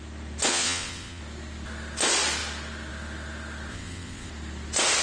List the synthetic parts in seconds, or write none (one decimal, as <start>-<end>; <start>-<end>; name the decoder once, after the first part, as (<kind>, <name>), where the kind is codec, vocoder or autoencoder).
0.5-1.2 (vocoder, WaveNeXt); 3.7-4.3